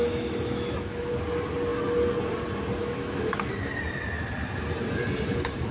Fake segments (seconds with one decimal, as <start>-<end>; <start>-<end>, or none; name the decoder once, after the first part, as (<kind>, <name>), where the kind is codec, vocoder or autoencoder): 0.0-1.1 (autoencoder, DAC-VAE); 2.8-3.5